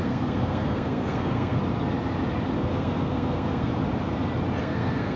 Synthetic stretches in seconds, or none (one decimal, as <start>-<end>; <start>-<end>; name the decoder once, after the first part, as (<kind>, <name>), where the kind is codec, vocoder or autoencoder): 0.0-1.6 (codec, SNAC); 2.6-3.7; 4.6-5.2